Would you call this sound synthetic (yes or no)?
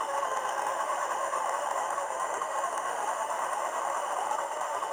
yes